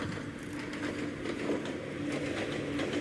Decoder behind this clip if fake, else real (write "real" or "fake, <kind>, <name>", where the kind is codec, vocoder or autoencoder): real